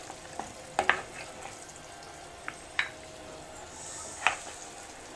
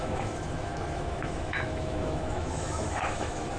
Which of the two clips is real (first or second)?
first